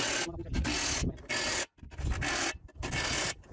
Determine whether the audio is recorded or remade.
recorded